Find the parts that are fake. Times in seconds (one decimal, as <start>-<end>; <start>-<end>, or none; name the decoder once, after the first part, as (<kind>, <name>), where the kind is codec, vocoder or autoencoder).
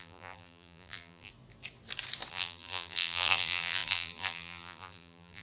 0.0-1.3 (vocoder, BigVGAN v2); 2.3-5.4